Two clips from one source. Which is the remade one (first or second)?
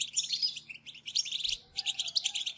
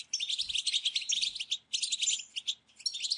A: first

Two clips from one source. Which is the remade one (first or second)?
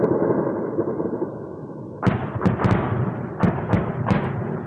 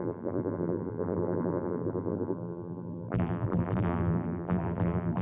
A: second